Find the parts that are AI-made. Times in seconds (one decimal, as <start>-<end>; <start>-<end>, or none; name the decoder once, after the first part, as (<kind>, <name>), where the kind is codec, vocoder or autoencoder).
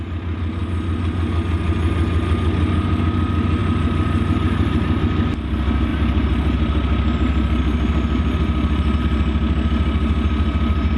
3.6-5.0 (vocoder, BigVGAN v2); 5.9-9.0